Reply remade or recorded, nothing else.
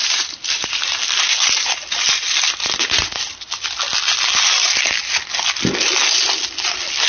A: recorded